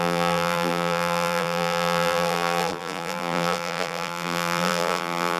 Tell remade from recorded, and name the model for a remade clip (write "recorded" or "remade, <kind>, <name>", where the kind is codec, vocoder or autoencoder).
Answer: remade, vocoder, BigVGAN v2